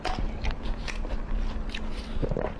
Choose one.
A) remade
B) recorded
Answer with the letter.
A